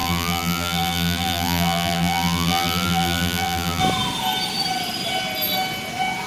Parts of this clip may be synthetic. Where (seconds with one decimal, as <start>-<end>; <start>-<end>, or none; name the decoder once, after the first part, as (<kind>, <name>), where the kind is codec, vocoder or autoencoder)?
0.0-3.8 (vocoder, BigVGAN v2)